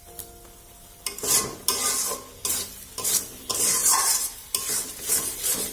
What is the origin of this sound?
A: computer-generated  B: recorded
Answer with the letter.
B